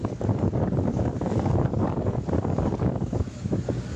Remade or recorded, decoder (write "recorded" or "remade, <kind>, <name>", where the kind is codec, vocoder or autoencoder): remade, codec, DAC